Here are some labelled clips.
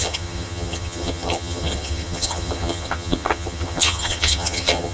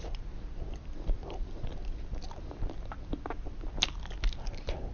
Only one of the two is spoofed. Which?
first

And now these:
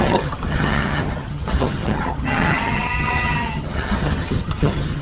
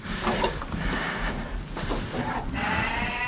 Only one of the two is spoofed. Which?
first